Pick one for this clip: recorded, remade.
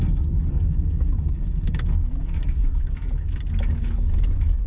remade